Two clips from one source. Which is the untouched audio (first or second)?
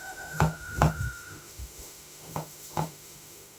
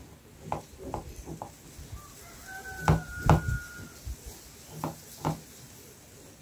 second